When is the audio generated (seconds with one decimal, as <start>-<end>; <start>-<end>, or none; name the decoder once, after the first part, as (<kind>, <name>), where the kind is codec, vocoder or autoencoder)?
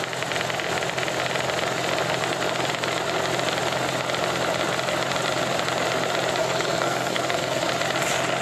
6.4-7.7 (codec, SNAC)